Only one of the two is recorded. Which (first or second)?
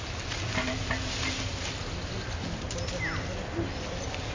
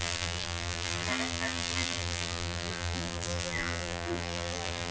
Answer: first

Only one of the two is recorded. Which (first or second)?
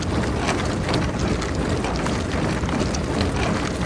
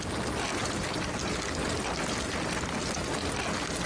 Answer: second